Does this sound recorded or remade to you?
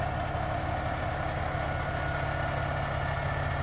recorded